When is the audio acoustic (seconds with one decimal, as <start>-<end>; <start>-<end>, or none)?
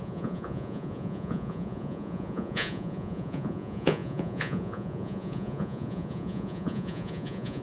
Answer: none